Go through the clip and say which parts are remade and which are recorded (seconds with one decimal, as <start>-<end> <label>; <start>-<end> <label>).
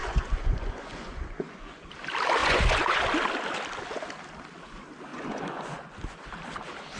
0.0-1.9 remade; 1.9-2.4 recorded; 2.4-3.0 remade; 3.0-5.1 recorded; 5.1-6.0 remade; 6.0-7.0 recorded